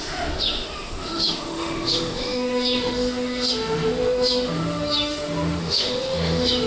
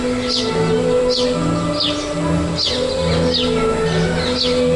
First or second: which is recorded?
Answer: second